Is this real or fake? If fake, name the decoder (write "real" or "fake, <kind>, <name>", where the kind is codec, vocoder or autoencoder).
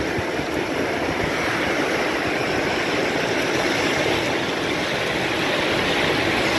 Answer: real